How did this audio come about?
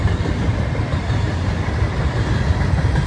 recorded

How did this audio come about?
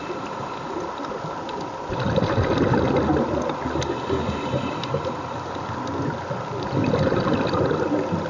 recorded